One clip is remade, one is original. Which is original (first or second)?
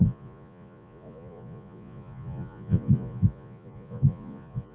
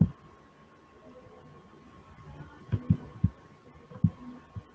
second